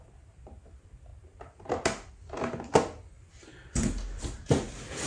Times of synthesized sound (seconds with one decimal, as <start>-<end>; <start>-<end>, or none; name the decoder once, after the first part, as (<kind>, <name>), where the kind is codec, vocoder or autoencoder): none